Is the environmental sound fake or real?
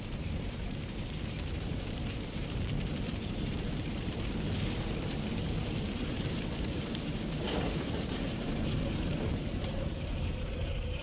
fake